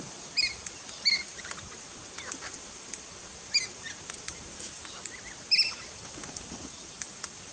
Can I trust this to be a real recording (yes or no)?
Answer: yes